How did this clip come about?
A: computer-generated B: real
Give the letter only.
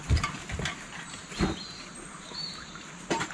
B